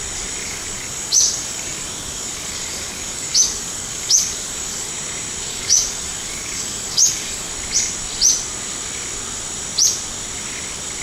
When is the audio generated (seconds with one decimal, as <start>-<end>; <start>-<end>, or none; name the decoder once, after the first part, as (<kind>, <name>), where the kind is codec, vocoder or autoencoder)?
0.4-4.9 (codec, DAC); 5.5-7.5